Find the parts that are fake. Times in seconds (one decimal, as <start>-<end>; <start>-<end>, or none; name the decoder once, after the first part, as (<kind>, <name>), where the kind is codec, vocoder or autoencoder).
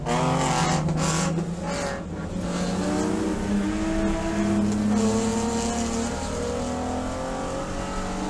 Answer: none